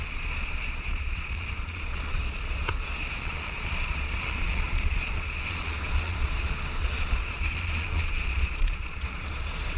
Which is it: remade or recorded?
remade